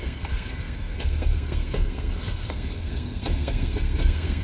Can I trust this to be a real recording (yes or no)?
no